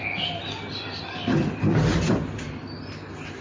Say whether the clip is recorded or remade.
recorded